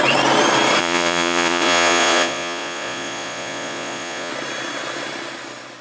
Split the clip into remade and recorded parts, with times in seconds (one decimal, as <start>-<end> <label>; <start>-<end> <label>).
0.0-0.8 recorded; 0.8-4.3 remade; 4.3-5.8 recorded